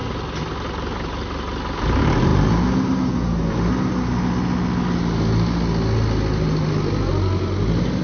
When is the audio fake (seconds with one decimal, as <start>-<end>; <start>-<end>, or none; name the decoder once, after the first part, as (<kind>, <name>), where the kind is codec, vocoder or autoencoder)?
none

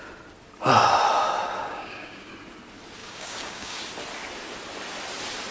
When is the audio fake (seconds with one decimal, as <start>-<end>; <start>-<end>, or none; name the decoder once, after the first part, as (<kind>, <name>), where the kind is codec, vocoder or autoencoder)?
1.6-2.3 (codec, DAC); 3.0-3.8